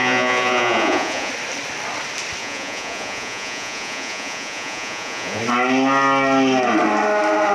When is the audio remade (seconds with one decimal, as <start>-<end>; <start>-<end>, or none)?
0.0-1.3; 2.4-5.4